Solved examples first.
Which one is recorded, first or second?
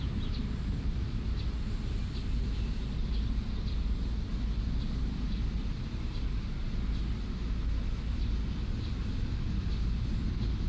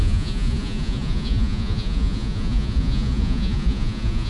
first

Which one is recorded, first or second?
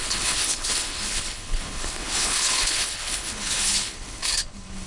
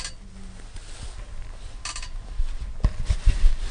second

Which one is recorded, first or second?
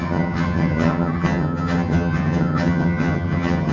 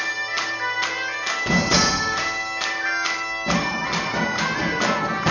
second